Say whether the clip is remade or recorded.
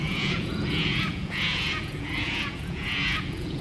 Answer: remade